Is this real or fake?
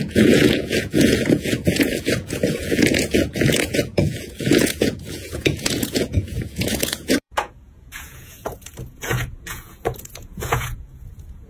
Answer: fake